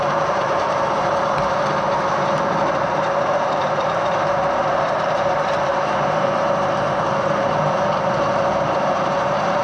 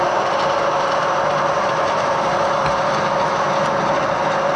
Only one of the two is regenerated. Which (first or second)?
first